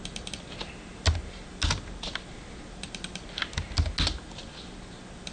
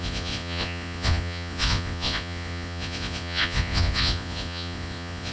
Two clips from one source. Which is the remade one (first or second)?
second